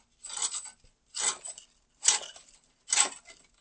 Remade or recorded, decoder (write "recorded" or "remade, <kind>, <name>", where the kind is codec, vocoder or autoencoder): recorded